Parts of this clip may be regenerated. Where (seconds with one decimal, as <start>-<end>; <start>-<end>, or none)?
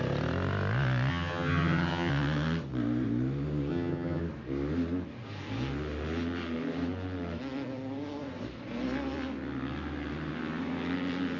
1.1-2.1; 3.7-4.2